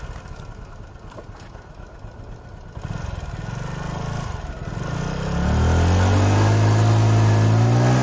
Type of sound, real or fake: real